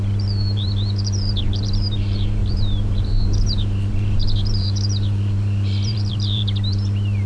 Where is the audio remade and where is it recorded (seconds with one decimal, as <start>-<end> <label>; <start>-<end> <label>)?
0.0-7.3 remade